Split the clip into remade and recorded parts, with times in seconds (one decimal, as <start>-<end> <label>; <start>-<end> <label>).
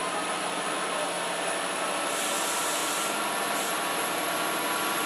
0.0-0.5 remade; 0.5-2.8 recorded; 2.8-4.3 remade; 4.3-5.1 recorded